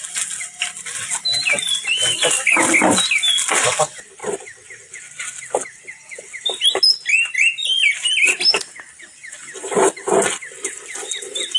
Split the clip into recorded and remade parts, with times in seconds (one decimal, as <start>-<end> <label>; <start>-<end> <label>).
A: 0.0-11.6 recorded